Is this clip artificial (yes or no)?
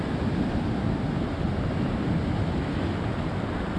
no